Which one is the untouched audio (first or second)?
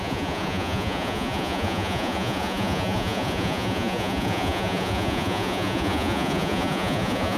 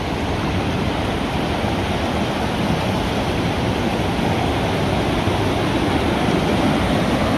second